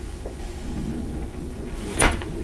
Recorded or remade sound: remade